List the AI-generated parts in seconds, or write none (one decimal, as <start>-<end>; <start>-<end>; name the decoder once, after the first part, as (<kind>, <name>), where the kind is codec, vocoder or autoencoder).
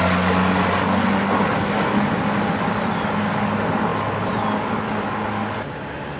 none